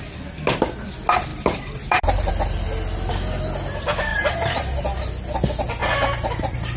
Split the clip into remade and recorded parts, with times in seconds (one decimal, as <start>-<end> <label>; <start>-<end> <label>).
0.0-1.3 recorded; 1.3-2.3 remade; 2.3-4.1 recorded; 4.1-5.1 remade; 5.1-5.8 recorded; 5.8-6.8 remade

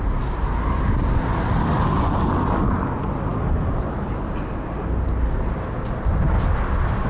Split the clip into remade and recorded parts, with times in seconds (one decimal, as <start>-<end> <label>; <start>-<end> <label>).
0.0-7.1 recorded

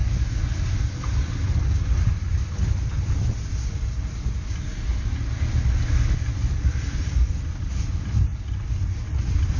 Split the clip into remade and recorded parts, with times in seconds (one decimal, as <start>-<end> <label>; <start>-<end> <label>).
0.0-2.3 recorded; 2.3-3.5 remade; 3.5-6.4 recorded; 6.4-7.3 remade; 7.3-9.6 recorded

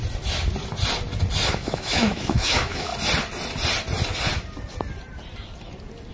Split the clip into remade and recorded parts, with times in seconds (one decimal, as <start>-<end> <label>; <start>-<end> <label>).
0.0-1.5 recorded; 1.5-2.9 remade; 2.9-6.1 recorded

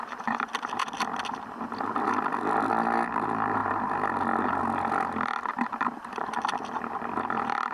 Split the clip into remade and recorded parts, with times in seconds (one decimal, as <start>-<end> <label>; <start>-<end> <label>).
0.0-7.7 recorded

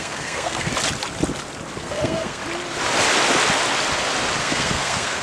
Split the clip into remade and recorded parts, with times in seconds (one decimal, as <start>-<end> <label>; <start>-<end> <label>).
0.0-0.7 remade; 0.7-1.8 recorded; 1.8-2.4 remade; 2.4-4.4 recorded; 4.4-5.2 remade

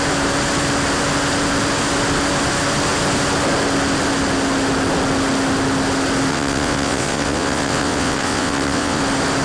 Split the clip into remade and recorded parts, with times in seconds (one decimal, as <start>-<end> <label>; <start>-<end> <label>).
0.0-6.3 recorded; 6.3-9.0 remade; 9.0-9.4 recorded